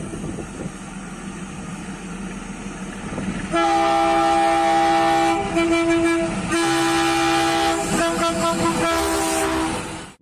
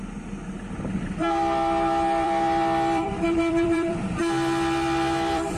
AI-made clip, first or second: second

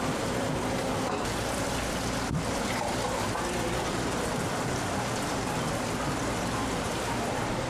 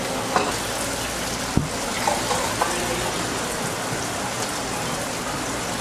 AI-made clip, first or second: first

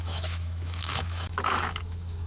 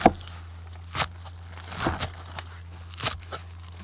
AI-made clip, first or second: first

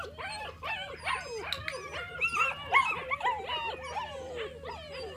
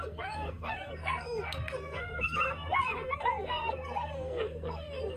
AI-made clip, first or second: second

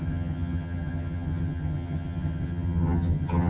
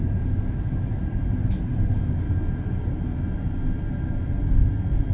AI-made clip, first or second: first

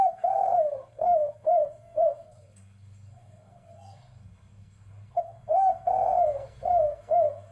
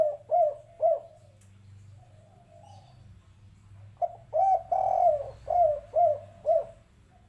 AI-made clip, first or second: first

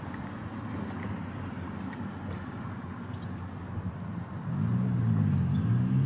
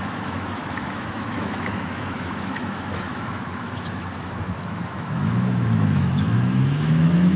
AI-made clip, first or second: second